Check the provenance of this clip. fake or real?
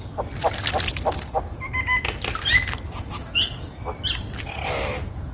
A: real